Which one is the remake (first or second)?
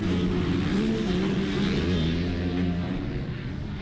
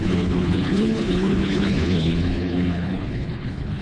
second